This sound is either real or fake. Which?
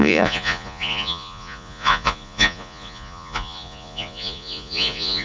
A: fake